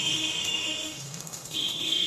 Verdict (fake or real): fake